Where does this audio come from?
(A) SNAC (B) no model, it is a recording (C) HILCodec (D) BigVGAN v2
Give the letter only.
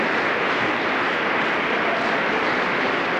D